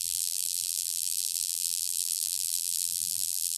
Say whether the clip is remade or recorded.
remade